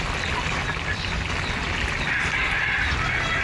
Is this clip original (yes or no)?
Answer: yes